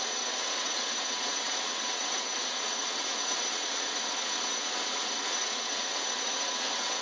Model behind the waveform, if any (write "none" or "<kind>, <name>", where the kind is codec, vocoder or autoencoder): vocoder, WaveNeXt